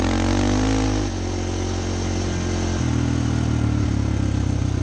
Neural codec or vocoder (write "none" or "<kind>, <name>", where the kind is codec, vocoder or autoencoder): none